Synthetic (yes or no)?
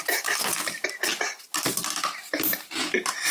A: no